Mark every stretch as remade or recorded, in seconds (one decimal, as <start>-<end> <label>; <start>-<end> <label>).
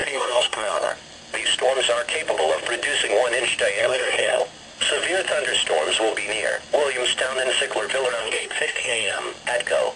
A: 0.0-0.9 remade; 0.9-3.8 recorded; 3.8-4.4 remade; 4.4-8.2 recorded; 8.2-9.2 remade; 9.2-10.0 recorded